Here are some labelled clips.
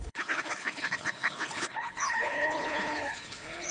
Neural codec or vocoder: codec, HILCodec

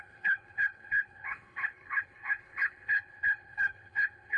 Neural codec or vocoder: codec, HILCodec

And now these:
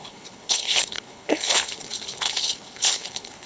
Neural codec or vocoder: codec, HILCodec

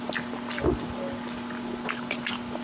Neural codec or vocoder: none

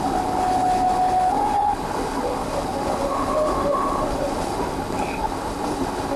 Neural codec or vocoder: codec, HILCodec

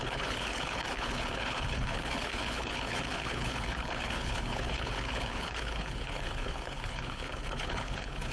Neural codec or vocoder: codec, HILCodec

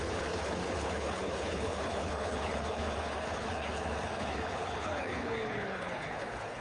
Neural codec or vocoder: codec, HILCodec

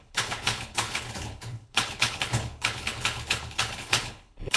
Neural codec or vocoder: codec, HILCodec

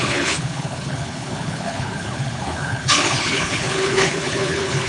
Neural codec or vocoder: codec, HILCodec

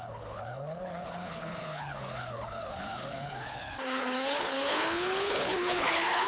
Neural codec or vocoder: codec, HILCodec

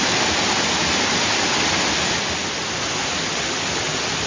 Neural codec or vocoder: none